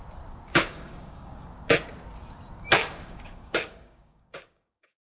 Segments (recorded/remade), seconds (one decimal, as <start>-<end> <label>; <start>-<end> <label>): 0.0-0.5 recorded; 0.5-1.5 remade; 1.5-2.8 recorded; 2.8-5.1 remade